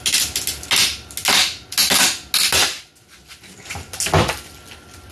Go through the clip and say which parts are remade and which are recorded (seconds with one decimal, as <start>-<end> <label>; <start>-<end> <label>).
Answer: 0.0-5.1 recorded